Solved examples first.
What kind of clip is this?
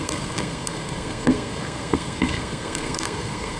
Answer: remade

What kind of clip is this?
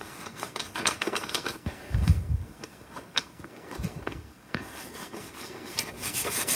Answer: remade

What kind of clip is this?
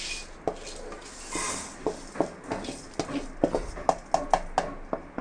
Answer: recorded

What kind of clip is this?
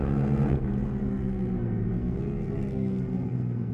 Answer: remade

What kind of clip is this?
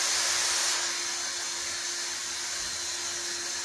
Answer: recorded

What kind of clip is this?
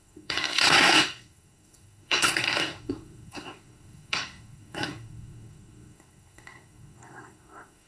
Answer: remade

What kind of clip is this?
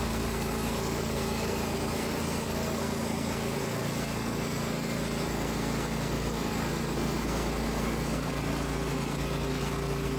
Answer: remade